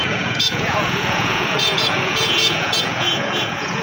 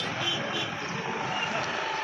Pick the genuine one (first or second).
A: second